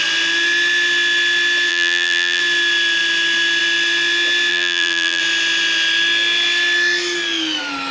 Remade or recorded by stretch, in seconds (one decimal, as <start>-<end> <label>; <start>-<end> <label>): 0.0-1.7 recorded; 1.7-2.4 remade; 2.4-4.5 recorded; 4.5-5.2 remade; 5.2-7.9 recorded